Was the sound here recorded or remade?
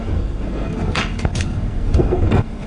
remade